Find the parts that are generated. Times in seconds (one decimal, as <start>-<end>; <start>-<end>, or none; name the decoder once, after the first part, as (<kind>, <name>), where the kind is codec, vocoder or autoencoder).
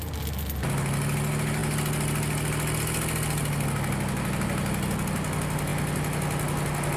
none